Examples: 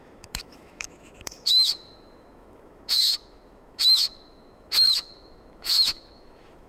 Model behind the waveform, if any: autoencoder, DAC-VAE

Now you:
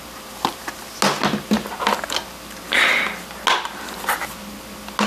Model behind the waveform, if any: none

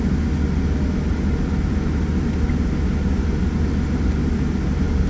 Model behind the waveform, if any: none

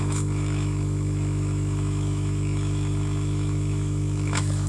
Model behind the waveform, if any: autoencoder, DAC-VAE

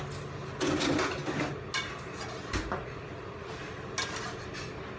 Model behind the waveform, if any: none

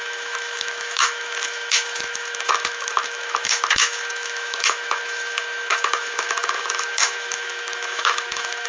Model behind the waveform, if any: autoencoder, DAC-VAE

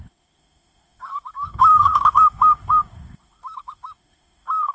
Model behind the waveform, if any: autoencoder, DAC-VAE